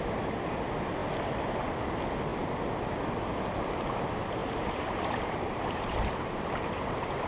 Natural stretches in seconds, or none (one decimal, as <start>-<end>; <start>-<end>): 0.0-4.4; 6.7-7.3

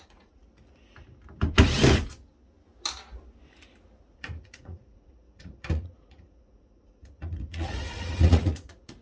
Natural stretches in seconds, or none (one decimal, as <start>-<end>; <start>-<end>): 0.4-4.0

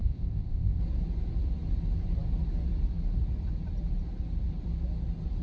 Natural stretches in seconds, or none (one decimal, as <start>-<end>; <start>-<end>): 0.8-5.4

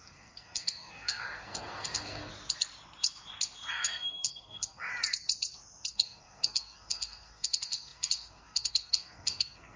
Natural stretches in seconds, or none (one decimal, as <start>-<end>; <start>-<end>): 2.3-3.7; 4.9-5.9

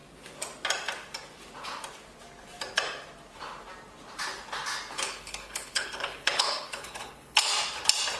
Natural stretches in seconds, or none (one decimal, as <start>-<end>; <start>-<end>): 0.0-4.9; 7.5-8.2